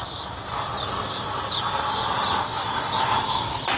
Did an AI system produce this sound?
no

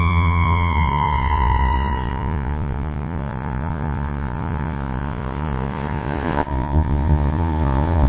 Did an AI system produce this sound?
yes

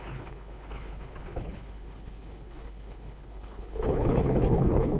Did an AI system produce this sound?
yes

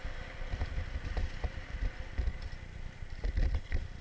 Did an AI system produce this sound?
no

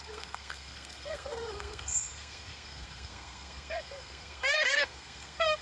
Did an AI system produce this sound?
yes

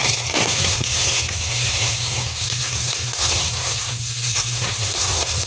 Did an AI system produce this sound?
yes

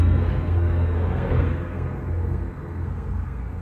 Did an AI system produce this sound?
yes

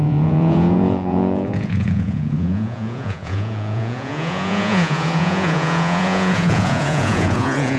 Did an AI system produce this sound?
yes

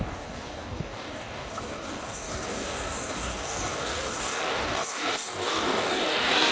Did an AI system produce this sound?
yes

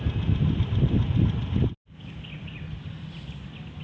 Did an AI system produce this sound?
no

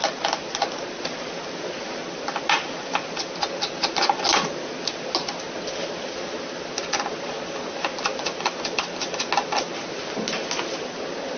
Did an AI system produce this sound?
no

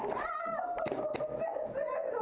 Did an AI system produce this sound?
no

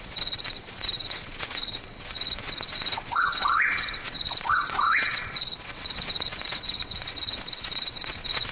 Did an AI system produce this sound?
yes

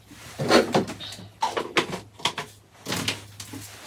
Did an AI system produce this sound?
no